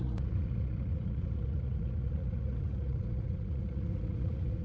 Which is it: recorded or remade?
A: remade